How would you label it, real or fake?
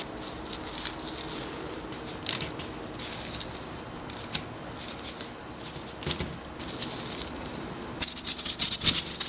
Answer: real